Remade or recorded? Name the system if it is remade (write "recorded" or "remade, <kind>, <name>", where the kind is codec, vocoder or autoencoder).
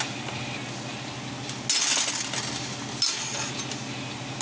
recorded